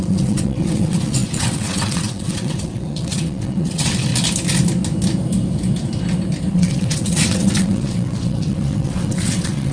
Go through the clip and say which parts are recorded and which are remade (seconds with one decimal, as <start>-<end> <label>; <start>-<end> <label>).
0.0-4.1 remade; 4.1-6.5 recorded; 6.5-9.7 remade

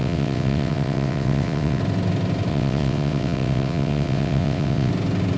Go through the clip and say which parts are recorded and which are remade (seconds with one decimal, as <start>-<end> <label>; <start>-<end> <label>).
0.0-1.8 remade; 1.8-2.5 recorded; 2.5-4.9 remade; 4.9-5.4 recorded

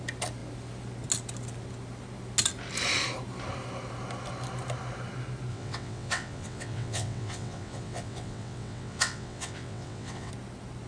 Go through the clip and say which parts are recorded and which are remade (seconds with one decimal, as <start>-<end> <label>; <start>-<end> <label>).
0.0-5.5 recorded; 5.5-10.3 remade; 10.3-10.9 recorded

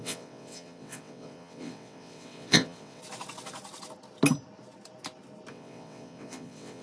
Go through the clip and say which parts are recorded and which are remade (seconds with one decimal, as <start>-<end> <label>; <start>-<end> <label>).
0.0-3.0 remade; 3.0-5.5 recorded; 5.5-6.8 remade